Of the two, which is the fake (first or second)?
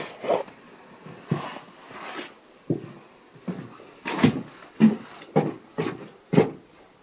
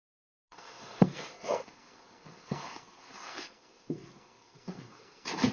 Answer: second